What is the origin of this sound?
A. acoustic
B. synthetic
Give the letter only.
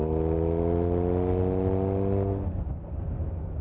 A